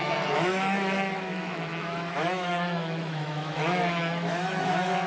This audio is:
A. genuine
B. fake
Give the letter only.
B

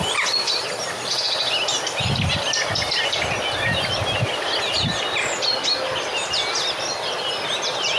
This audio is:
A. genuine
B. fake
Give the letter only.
A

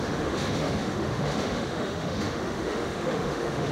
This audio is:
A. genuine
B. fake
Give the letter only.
B